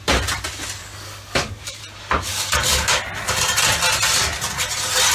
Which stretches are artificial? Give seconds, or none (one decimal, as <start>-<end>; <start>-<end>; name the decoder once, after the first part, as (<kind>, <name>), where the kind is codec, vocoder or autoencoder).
0.8-1.8 (codec, DAC); 2.3-3.0